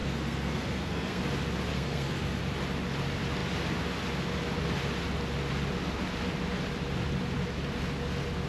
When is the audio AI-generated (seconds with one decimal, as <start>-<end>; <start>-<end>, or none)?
0.0-1.2; 1.7-2.4